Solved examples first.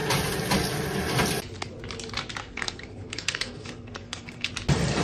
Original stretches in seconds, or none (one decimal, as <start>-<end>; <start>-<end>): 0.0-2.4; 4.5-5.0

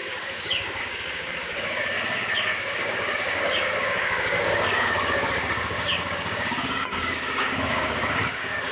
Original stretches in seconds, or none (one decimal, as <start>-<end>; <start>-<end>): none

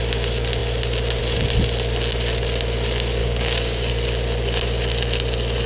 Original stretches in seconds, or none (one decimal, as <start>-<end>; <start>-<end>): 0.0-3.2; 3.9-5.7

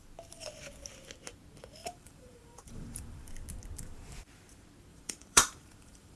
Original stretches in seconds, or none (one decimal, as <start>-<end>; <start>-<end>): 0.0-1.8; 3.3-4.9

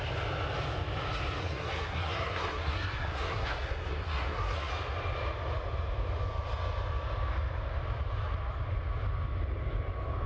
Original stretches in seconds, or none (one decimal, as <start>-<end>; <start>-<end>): 0.0-1.4; 4.7-10.3